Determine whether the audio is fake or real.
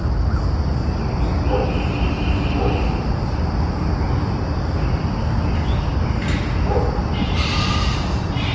real